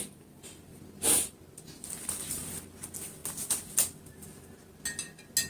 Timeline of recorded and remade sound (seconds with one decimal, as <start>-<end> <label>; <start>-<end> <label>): 0.0-5.5 recorded